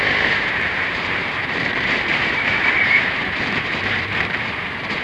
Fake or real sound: fake